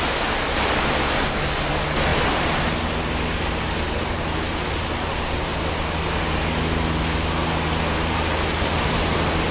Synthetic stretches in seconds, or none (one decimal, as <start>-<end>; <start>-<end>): 2.1-2.9